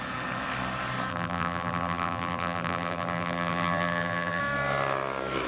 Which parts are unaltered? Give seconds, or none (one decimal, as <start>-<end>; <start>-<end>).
0.0-1.1; 4.4-5.5